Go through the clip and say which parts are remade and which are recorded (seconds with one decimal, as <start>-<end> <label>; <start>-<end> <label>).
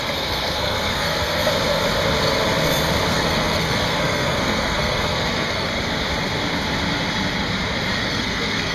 0.0-1.5 remade; 1.5-3.1 recorded; 3.1-5.7 remade; 5.7-8.0 recorded; 8.0-8.7 remade